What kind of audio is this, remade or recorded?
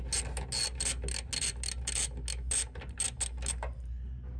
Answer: recorded